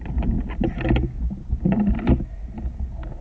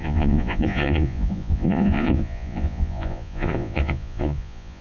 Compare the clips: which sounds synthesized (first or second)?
second